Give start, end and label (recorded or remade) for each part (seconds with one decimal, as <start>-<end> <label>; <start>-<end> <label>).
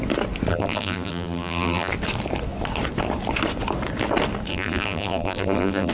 0.0-0.5 recorded; 0.5-1.9 remade; 1.9-4.5 recorded; 4.5-5.9 remade